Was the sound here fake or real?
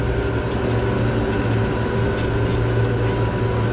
real